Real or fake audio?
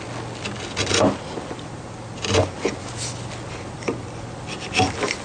real